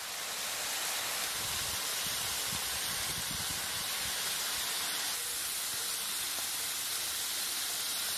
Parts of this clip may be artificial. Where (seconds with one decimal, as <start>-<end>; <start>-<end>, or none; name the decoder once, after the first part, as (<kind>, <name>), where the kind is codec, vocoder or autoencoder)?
1.9-3.9 (vocoder, BigVGAN v2)